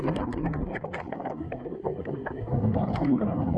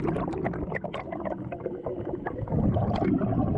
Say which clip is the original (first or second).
second